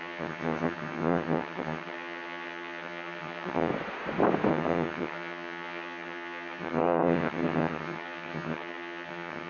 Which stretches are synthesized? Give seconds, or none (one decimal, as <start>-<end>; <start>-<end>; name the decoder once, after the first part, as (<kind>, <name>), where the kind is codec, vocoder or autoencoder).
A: 0.0-3.7 (vocoder, HiFi-GAN); 4.5-9.5

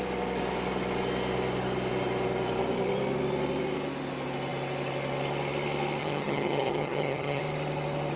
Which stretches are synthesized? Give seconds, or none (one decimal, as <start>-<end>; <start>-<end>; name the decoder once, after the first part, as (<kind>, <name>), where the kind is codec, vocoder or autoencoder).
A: 6.0-7.4 (vocoder, HiFi-GAN)

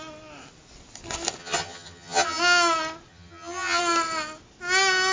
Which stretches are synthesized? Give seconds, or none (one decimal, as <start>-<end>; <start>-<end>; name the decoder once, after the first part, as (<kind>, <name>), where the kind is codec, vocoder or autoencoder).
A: 1.4-2.4 (vocoder, HiFi-GAN); 3.1-3.8

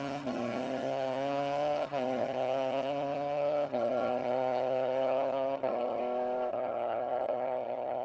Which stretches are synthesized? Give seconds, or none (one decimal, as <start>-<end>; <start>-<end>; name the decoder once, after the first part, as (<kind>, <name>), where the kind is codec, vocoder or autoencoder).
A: 0.0-6.0 (vocoder, HiFi-GAN); 6.5-8.0

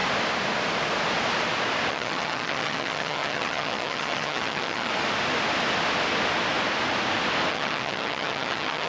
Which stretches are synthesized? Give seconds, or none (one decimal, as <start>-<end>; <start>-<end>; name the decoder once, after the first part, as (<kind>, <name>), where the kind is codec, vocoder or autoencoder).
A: 1.9-4.9 (vocoder, HiFi-GAN); 7.5-8.9

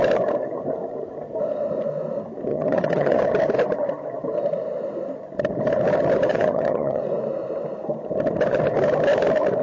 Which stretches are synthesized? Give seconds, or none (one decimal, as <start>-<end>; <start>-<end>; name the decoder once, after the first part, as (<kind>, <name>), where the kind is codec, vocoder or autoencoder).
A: 2.5-3.2 (vocoder, HiFi-GAN); 6.3-7.0

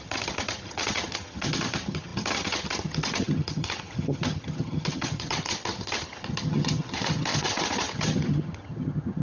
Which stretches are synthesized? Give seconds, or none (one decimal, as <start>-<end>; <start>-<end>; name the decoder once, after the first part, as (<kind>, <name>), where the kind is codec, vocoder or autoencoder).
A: 0.0-9.2 (vocoder, HiFi-GAN)

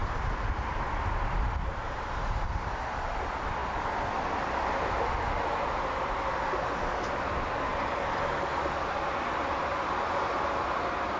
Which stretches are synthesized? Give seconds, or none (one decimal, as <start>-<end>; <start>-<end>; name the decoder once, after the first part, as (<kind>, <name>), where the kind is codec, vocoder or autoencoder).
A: none